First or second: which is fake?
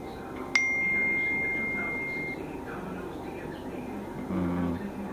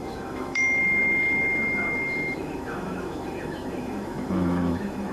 second